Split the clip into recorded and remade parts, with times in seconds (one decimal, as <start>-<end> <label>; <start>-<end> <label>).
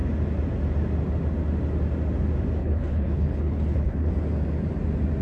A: 0.0-2.6 recorded; 2.6-4.1 remade; 4.1-5.2 recorded